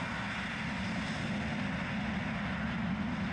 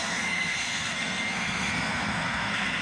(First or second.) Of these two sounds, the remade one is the second